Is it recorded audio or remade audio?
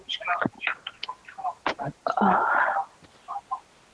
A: recorded